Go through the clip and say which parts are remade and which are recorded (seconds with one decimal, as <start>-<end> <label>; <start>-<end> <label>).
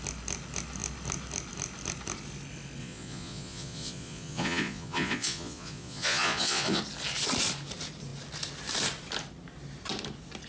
0.0-2.8 recorded; 2.8-6.8 remade; 6.8-10.5 recorded